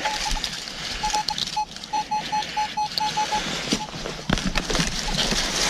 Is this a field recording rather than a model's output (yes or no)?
no